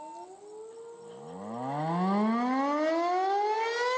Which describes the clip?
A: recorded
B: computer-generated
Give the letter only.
A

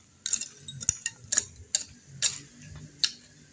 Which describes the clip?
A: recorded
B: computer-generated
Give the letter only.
A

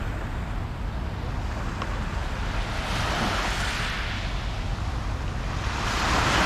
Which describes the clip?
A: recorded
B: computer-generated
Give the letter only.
A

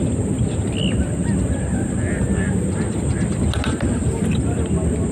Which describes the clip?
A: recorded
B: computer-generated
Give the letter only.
A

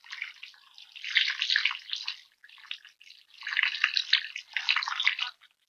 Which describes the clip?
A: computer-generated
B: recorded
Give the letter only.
B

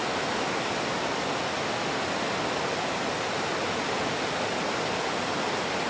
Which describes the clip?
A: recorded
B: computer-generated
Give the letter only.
A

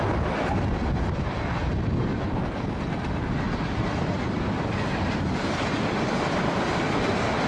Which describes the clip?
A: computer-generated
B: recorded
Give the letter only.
B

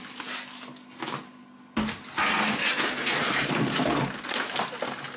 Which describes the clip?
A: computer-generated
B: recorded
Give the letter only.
B